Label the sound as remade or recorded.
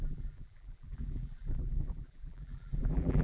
remade